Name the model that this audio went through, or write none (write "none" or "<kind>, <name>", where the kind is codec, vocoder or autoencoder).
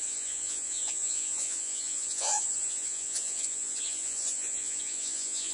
vocoder, Vocos